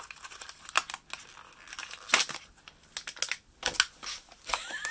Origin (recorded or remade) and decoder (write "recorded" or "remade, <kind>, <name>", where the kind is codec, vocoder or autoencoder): recorded